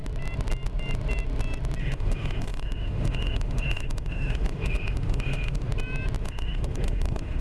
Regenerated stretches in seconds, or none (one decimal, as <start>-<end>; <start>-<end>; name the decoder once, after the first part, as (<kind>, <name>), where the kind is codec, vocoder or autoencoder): 1.8-5.7 (autoencoder, DAC-VAE); 6.2-7.4